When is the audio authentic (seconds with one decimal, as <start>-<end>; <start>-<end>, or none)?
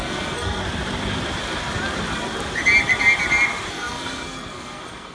0.6-3.7